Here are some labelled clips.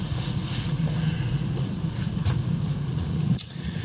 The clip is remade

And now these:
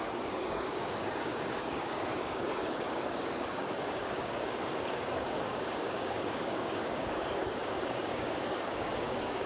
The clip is remade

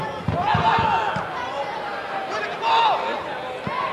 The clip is recorded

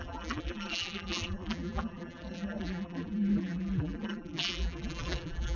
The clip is remade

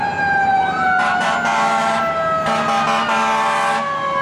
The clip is recorded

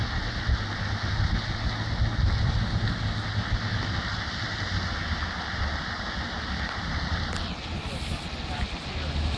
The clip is recorded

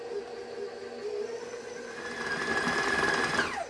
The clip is recorded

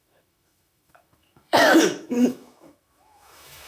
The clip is remade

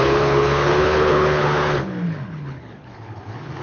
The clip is remade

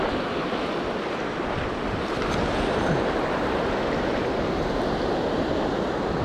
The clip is recorded